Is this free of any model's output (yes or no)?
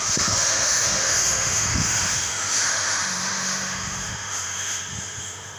no